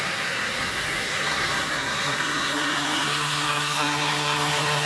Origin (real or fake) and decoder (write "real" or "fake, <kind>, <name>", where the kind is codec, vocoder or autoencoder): fake, codec, SNAC